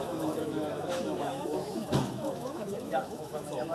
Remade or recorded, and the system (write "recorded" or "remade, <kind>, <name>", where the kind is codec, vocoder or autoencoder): remade, autoencoder, DAC-VAE